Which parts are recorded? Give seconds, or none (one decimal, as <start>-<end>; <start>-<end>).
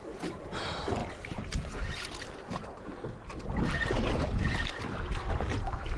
0.0-1.0; 2.3-6.0